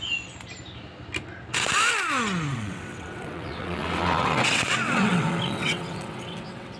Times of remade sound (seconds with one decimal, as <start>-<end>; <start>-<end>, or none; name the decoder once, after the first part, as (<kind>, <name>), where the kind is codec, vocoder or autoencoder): 2.5-6.8 (vocoder, WaveNeXt)